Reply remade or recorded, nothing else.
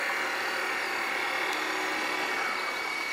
recorded